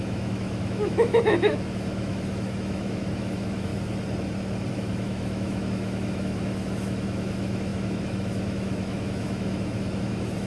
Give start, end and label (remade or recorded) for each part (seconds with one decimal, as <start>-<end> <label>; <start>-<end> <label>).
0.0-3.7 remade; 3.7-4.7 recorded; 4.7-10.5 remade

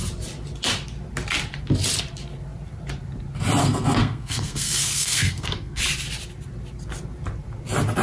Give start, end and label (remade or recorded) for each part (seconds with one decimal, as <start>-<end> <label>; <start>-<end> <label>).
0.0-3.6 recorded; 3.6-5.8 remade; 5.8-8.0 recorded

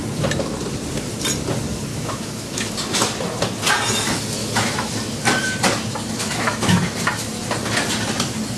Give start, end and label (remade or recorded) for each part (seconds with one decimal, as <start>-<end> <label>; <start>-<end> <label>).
0.0-1.9 recorded; 1.9-2.7 remade; 2.7-4.4 recorded; 4.4-4.9 remade; 4.9-6.2 recorded; 6.2-6.8 remade; 6.8-8.6 recorded